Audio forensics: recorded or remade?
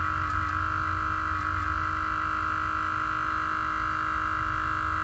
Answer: recorded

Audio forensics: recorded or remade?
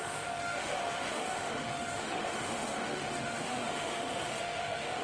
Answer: remade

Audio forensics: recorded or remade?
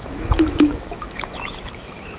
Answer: remade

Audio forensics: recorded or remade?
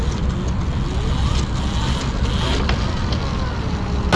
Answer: recorded